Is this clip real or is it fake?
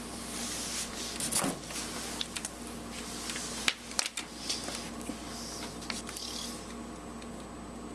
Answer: real